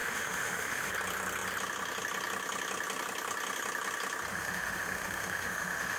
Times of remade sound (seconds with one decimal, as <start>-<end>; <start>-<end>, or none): 0.0-0.9; 4.3-6.0